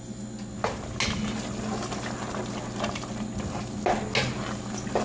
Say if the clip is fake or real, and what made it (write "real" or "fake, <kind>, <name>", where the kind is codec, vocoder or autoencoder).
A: real